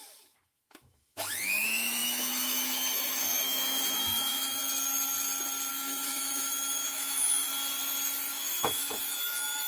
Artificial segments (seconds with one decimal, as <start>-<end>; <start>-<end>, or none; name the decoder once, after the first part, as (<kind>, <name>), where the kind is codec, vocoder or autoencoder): 0.0-4.6 (autoencoder, DAC-VAE); 5.7-7.5; 8.3-9.7